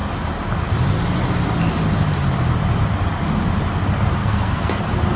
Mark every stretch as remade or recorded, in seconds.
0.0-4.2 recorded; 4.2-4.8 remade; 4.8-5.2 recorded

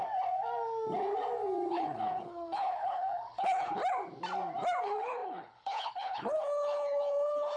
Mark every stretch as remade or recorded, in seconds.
0.0-1.7 recorded; 1.7-3.8 remade; 3.8-4.8 recorded; 4.8-7.6 remade